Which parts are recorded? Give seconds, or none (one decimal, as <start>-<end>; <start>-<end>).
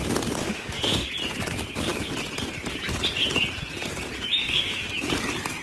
0.0-0.4; 1.1-4.4; 4.9-5.6